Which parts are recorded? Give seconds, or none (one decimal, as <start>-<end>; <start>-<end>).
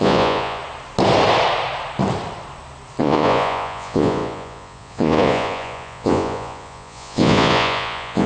0.6-3.0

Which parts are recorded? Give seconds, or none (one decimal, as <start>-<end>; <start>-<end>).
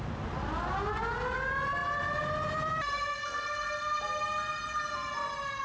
0.0-5.6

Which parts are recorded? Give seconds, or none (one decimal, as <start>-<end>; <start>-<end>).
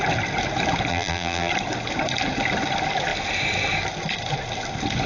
0.0-0.9; 1.5-5.1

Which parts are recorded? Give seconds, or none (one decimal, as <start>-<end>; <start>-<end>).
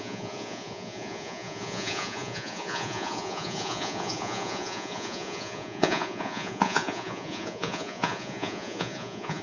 none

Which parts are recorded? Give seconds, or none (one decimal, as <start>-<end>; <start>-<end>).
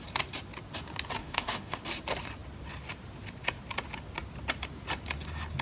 0.0-1.2; 1.8-5.6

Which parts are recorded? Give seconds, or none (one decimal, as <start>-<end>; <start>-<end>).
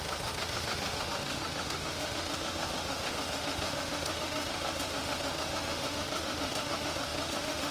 none